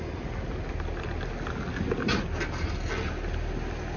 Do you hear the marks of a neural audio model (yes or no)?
no